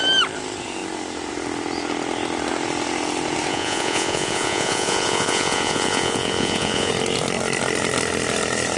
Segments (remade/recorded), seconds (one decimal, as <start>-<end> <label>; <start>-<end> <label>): 0.0-3.5 recorded; 3.5-6.9 remade; 6.9-8.8 recorded